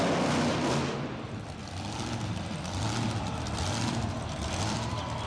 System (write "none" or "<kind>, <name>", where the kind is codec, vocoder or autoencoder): none